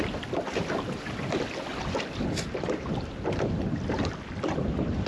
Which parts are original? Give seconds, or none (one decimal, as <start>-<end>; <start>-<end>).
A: 0.0-5.1